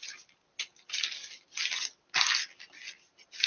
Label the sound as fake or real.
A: real